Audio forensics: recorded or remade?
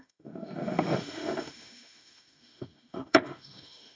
remade